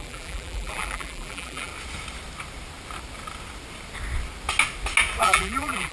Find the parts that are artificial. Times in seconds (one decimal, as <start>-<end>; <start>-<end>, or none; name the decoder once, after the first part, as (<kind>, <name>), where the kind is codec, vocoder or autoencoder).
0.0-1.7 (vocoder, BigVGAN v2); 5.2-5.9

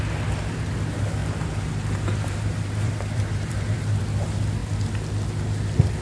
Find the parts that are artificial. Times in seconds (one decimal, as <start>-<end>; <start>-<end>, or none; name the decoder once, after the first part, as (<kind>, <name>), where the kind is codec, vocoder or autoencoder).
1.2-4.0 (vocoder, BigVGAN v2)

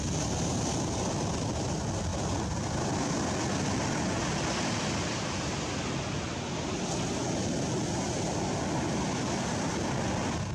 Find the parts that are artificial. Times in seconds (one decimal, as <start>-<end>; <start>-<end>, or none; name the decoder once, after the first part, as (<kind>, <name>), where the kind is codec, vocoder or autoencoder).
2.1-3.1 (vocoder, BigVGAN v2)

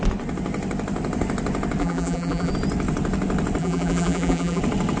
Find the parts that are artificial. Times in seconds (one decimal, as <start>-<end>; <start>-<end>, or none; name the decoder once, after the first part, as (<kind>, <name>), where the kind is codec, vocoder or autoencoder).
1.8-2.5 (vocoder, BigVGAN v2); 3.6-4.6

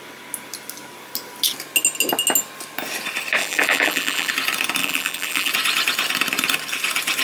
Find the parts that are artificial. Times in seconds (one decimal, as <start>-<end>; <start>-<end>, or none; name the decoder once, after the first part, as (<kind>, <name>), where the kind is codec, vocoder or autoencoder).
3.4-4.3 (vocoder, BigVGAN v2); 4.8-5.5